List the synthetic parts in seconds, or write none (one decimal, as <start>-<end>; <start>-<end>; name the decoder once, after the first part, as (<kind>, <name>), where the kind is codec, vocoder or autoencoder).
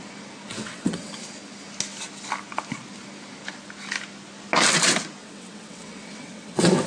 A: 0.5-1.1 (vocoder, WaveNeXt); 5.2-6.9